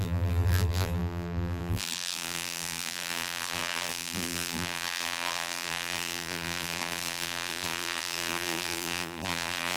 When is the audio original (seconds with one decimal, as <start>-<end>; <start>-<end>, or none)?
none